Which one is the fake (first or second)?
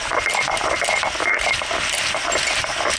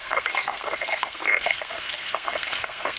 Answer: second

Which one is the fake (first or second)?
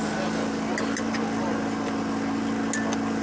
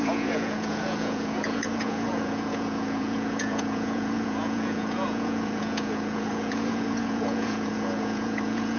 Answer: second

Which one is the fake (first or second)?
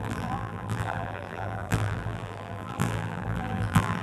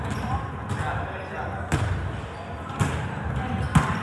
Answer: first